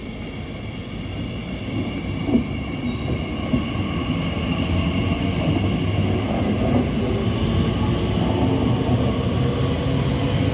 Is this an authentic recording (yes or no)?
yes